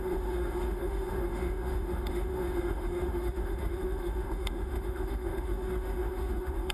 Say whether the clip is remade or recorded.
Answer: remade